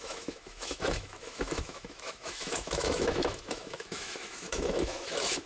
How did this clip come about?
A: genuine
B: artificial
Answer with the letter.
B